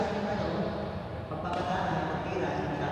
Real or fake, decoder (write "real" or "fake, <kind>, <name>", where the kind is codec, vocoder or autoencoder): fake, vocoder, BigVGAN v2